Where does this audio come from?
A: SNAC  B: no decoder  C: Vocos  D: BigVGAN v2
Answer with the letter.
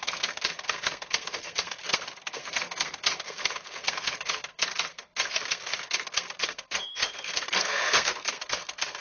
A